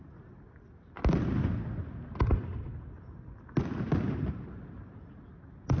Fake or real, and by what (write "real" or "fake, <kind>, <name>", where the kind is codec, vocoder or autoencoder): real